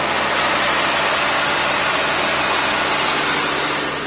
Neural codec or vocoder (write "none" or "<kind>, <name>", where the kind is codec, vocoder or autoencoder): none